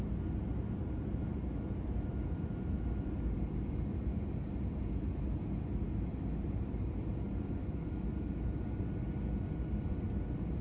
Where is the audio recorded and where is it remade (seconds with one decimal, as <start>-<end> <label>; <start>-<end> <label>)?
0.0-10.6 recorded